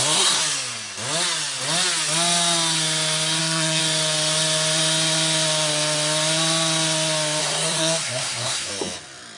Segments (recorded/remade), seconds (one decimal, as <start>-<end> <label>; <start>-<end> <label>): 0.0-0.4 remade; 0.4-3.4 recorded; 3.4-3.8 remade; 3.8-7.4 recorded; 7.4-8.7 remade; 8.7-9.4 recorded